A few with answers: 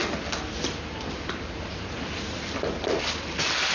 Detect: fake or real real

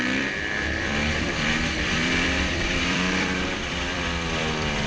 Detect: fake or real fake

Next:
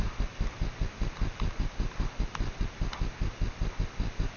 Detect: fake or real real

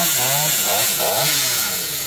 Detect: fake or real fake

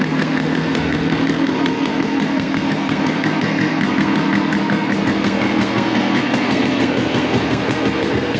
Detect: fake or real fake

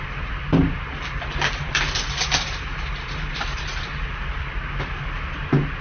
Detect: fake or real real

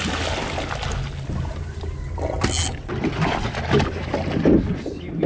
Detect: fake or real real